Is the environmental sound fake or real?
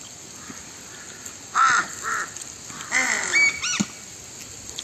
real